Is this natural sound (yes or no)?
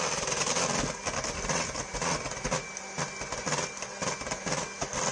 yes